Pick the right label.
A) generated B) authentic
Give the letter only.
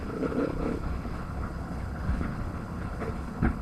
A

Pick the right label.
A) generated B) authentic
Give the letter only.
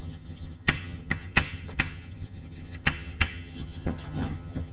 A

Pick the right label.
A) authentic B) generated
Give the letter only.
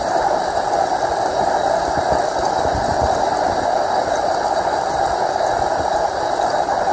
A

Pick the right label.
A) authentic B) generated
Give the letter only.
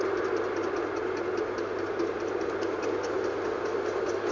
A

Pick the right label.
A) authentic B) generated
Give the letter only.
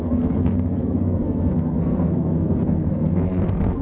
B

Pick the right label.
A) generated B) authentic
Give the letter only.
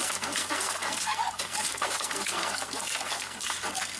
A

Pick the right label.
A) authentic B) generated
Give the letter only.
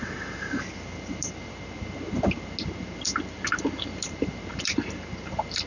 A